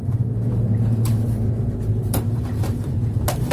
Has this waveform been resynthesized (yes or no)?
yes